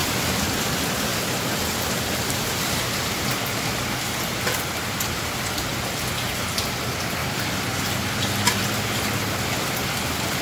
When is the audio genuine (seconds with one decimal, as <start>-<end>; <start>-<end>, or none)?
0.7-1.1; 5.9-10.4